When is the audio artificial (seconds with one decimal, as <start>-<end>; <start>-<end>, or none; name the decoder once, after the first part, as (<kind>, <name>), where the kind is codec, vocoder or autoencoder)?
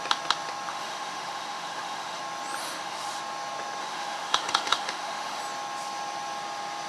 0.7-2.2 (autoencoder, DAC-VAE); 2.6-3.2; 3.8-5.4